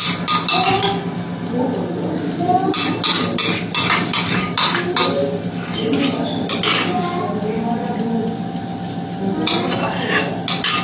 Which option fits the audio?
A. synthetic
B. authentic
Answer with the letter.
B